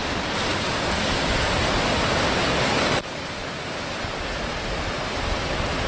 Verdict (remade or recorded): recorded